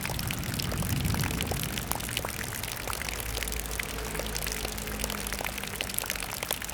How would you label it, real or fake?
real